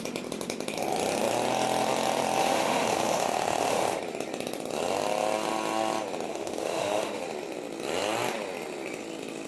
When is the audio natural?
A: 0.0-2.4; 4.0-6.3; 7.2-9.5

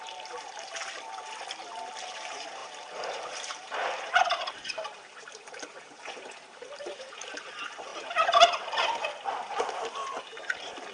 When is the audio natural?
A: 0.7-1.9; 7.9-9.5; 10.0-10.9

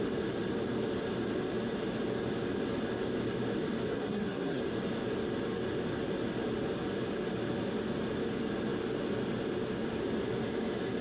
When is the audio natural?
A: 0.0-3.9; 4.6-11.0

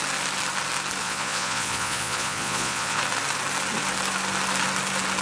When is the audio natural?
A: 0.0-1.0; 3.0-5.2

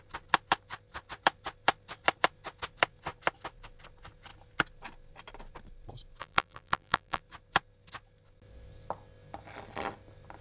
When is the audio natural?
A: 0.0-6.2; 7.2-10.4

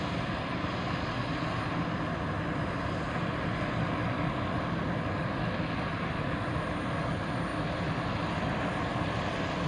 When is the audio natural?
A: 0.0-9.7

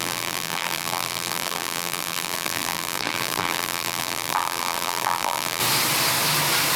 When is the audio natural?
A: 5.6-6.8

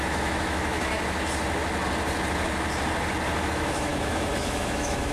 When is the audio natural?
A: 0.9-3.4